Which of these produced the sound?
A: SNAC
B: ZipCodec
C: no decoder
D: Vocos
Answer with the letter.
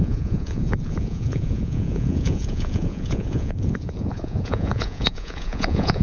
D